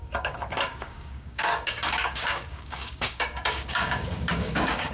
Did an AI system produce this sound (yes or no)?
yes